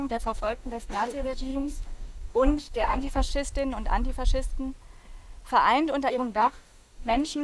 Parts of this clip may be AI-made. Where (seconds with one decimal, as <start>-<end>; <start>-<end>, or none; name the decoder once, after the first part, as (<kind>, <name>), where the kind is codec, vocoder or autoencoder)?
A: 0.0-3.3 (codec, DAC); 6.1-7.4